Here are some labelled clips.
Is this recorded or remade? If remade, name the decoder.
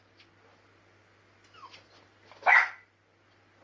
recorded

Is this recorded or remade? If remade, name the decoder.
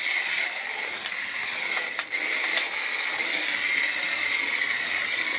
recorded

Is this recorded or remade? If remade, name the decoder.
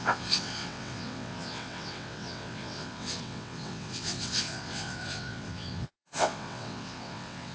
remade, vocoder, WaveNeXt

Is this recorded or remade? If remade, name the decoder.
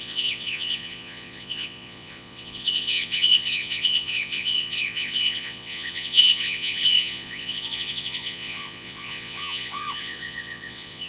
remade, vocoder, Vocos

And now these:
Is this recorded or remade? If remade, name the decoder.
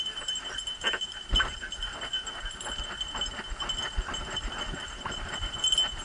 recorded